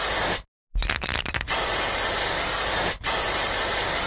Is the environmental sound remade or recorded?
recorded